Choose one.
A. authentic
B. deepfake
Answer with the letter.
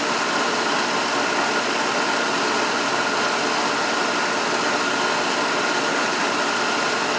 A